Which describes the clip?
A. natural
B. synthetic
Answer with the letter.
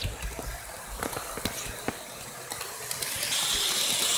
A